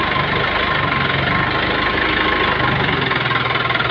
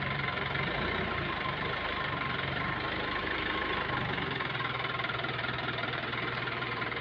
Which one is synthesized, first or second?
second